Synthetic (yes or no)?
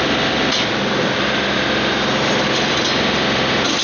no